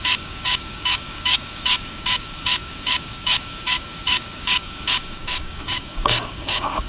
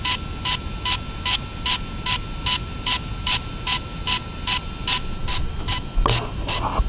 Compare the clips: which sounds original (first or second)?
second